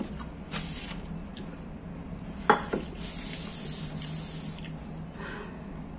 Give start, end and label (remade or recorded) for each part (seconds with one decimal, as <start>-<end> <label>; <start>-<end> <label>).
0.0-6.0 recorded